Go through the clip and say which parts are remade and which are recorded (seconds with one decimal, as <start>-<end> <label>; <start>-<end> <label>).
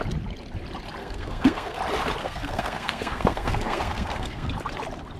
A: 0.0-1.0 recorded; 1.0-1.8 remade; 1.8-2.2 recorded; 2.2-4.5 remade; 4.5-5.2 recorded